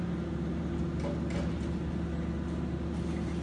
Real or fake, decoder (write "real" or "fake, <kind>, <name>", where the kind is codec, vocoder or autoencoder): real